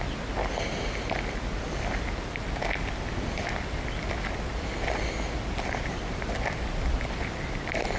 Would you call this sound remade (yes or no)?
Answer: no